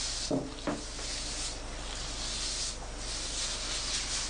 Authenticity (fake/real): real